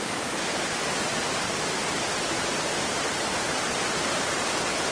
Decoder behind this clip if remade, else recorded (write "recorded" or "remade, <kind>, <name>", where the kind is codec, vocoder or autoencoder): recorded